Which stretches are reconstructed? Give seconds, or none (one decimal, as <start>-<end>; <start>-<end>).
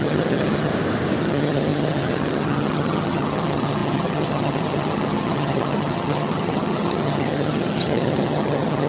0.0-0.7; 1.2-8.9